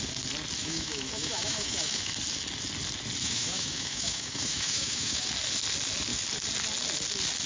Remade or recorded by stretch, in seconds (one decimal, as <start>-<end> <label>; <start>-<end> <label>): 0.0-0.6 recorded; 0.6-2.1 remade; 2.1-3.2 recorded; 3.2-5.3 remade; 5.3-7.5 recorded